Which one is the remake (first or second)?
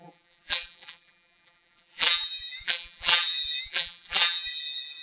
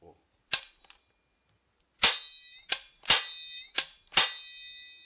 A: first